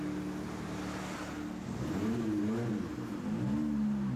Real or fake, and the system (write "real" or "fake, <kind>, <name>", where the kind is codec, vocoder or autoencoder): real